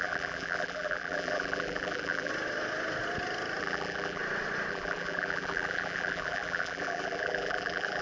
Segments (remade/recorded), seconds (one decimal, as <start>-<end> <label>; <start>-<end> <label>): 0.0-2.3 remade; 2.3-3.6 recorded; 3.6-4.2 remade; 4.2-4.7 recorded; 4.7-8.0 remade